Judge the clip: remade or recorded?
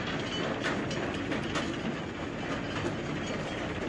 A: recorded